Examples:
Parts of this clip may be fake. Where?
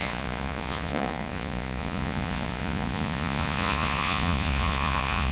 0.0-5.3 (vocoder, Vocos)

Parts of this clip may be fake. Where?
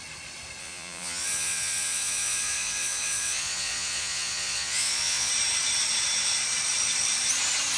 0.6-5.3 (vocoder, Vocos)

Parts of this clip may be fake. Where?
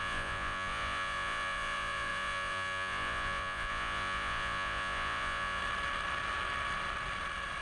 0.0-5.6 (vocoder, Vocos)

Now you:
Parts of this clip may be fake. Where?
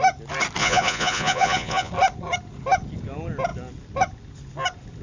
0.6-1.9 (vocoder, Vocos)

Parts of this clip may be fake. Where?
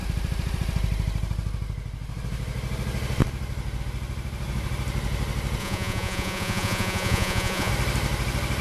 5.6-7.7 (vocoder, Vocos)